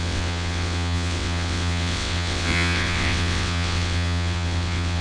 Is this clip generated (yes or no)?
yes